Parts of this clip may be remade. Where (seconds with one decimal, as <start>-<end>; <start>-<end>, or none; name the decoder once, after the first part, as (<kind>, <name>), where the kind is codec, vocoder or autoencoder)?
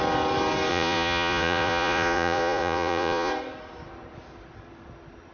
0.7-3.3 (vocoder, Vocos)